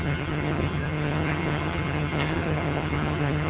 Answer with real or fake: fake